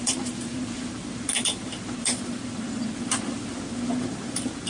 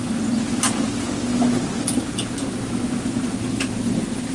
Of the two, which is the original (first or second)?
second